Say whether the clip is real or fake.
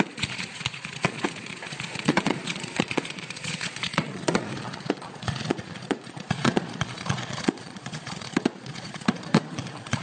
fake